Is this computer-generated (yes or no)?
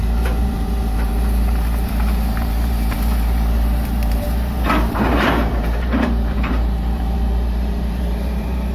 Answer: yes